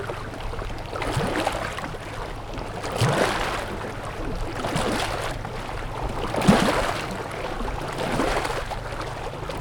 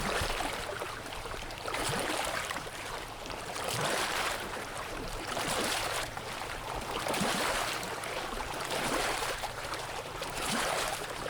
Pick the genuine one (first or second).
first